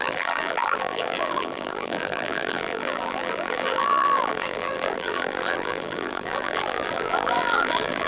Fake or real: fake